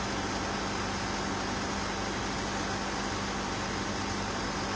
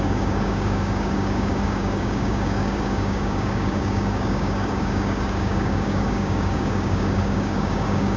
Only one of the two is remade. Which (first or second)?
second